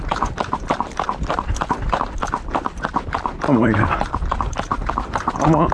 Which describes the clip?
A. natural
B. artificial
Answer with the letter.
A